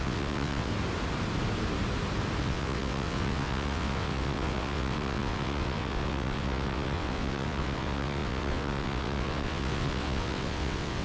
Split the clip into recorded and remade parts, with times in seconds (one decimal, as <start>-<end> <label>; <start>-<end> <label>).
0.0-0.7 remade; 0.7-2.4 recorded; 2.4-11.0 remade